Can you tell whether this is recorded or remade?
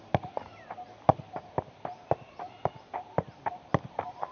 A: recorded